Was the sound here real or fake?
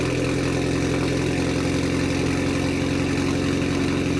real